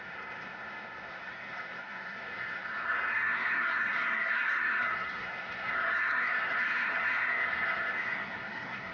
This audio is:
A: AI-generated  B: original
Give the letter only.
A